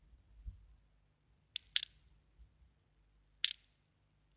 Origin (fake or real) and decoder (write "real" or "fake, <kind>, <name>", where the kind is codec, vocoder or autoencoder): real